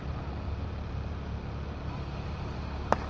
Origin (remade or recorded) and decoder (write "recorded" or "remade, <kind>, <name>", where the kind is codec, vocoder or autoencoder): recorded